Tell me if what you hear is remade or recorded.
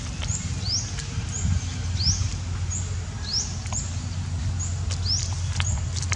recorded